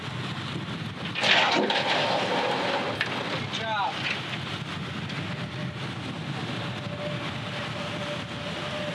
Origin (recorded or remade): recorded